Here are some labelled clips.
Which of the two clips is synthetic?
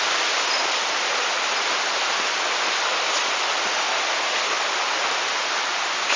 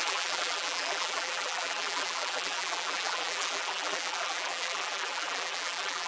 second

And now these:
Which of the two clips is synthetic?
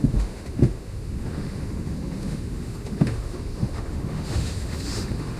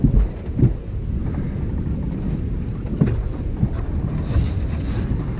first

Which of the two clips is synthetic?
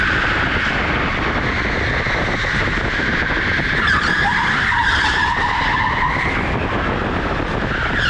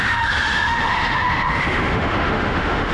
second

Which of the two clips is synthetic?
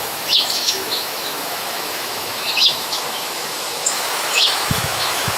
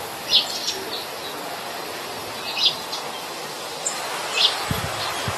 first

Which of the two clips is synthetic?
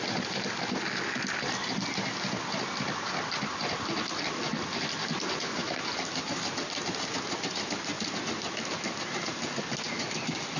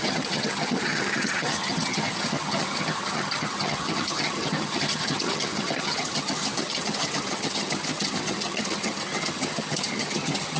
second